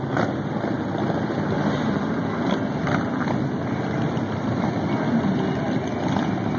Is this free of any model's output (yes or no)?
yes